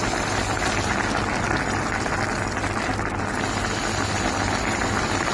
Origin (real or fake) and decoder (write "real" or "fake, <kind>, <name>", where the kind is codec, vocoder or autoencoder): real